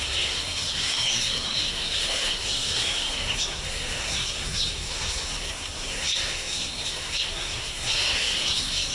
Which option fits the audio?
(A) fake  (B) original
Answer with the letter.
A